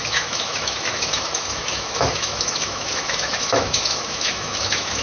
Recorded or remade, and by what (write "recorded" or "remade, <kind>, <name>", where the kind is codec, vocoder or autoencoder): remade, autoencoder, DAC-VAE